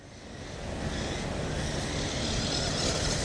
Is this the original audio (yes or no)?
yes